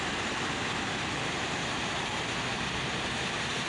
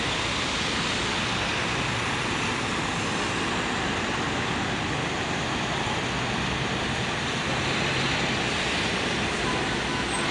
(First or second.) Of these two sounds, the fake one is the first